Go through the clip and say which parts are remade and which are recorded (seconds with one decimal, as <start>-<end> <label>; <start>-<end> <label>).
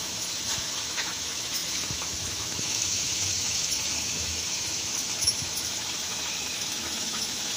0.0-7.6 remade